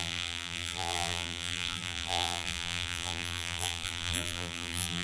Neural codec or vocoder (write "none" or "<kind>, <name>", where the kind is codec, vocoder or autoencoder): vocoder, BigVGAN v2